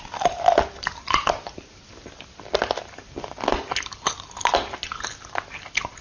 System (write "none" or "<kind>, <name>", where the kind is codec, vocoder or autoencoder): none